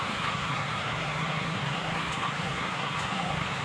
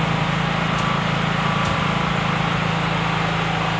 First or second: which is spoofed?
first